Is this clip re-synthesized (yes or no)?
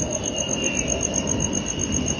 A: no